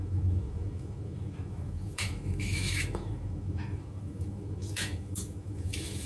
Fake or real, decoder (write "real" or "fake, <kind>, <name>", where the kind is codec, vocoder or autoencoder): fake, autoencoder, DAC-VAE